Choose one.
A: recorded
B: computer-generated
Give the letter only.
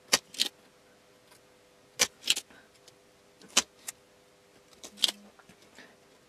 A